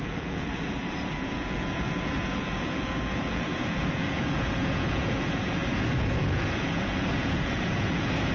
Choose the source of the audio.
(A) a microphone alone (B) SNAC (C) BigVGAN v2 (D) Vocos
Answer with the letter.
D